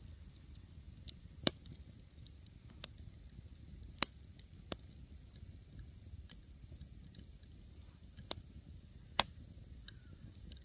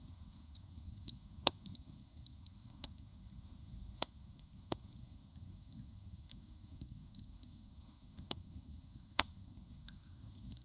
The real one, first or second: first